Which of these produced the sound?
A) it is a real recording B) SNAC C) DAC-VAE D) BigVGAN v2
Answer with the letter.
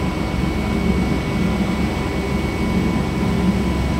A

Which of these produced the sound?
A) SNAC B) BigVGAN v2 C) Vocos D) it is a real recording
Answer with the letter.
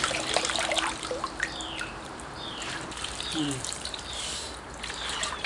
B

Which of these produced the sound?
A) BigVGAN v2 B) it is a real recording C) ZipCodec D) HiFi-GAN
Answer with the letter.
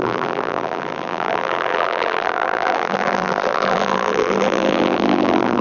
A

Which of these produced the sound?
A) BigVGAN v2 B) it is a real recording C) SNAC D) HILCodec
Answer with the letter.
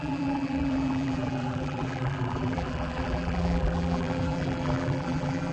A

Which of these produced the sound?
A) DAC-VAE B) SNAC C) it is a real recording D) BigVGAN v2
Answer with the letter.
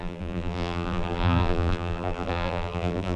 D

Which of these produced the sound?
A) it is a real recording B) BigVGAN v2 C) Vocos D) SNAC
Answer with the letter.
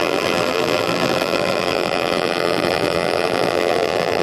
B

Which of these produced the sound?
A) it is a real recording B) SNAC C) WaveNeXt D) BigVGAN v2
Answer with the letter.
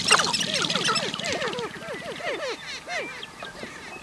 A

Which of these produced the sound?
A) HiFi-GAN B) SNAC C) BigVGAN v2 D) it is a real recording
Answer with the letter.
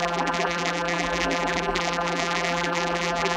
C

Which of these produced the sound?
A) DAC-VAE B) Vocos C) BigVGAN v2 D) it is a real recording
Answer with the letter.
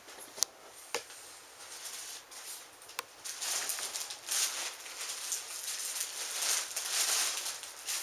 D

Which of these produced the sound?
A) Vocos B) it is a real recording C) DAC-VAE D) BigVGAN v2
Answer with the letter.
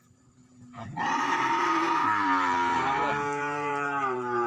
D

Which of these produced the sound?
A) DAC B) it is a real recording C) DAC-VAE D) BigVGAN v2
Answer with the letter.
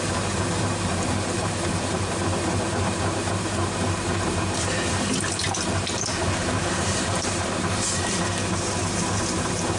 D